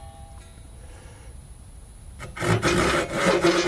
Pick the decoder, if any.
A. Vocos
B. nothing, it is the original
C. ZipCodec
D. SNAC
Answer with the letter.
B